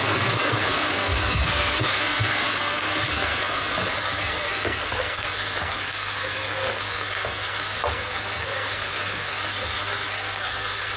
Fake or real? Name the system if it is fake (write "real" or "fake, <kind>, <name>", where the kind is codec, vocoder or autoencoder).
fake, codec, SNAC